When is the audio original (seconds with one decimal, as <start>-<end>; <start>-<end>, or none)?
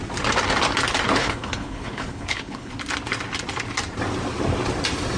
0.0-1.2; 2.7-5.2